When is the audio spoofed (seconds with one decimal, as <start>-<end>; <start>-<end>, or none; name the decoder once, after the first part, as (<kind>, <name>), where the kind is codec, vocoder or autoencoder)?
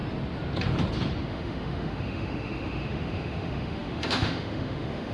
1.3-5.1 (autoencoder, DAC-VAE)